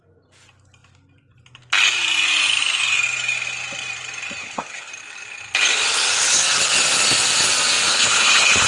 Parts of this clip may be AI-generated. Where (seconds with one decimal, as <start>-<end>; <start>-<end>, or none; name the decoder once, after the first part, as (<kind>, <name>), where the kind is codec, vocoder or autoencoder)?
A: 4.4-4.9 (codec, HILCodec); 7.9-8.7